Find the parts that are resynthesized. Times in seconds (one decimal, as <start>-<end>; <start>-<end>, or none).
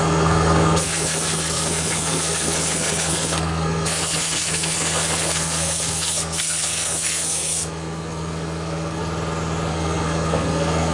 0.0-9.0; 9.7-10.9